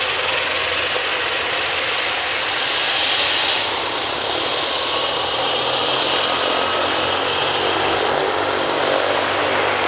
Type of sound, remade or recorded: recorded